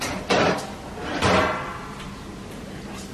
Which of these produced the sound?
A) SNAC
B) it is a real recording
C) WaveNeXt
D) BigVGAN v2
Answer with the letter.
B